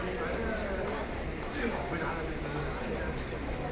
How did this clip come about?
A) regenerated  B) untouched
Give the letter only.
B